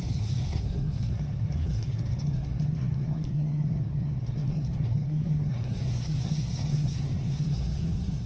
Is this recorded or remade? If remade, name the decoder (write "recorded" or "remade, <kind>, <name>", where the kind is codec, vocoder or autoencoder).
remade, codec, SNAC